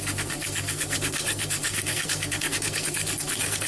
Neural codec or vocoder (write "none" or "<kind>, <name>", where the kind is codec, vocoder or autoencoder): codec, SNAC